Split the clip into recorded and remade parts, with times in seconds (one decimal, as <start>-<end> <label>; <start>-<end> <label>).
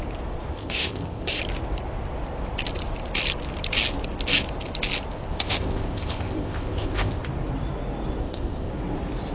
0.0-0.5 recorded; 0.5-1.4 remade; 1.4-5.3 recorded; 5.3-7.2 remade; 7.2-8.2 recorded; 8.2-8.7 remade; 8.7-9.3 recorded